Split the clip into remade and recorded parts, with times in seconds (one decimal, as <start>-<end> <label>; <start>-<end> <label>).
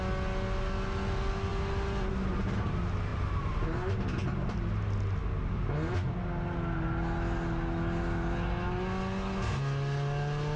0.0-3.1 recorded; 3.1-3.9 remade; 3.9-10.6 recorded